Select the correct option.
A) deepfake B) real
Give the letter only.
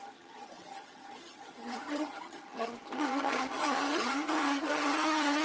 A